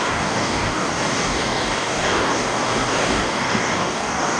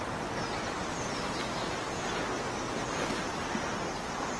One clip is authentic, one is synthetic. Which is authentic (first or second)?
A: second